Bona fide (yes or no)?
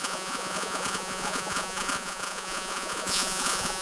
no